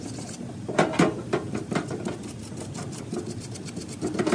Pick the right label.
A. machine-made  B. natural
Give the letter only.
B